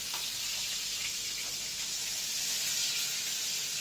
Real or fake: real